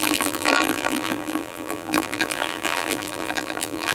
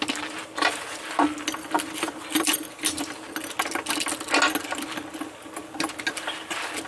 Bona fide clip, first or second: second